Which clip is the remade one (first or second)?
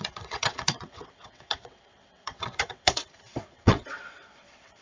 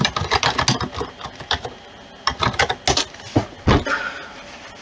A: first